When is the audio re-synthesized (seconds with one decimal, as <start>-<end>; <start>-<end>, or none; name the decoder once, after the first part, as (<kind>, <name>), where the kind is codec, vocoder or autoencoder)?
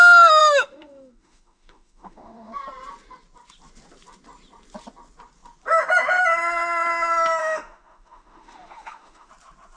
0.4-2.5 (autoencoder, DAC-VAE); 7.4-9.3